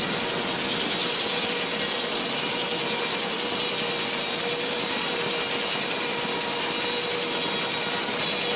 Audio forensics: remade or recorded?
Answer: recorded